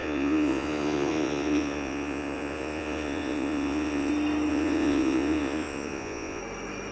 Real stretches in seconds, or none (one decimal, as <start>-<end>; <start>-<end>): 4.1-4.5; 6.4-6.9